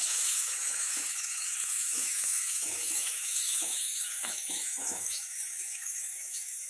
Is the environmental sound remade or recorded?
remade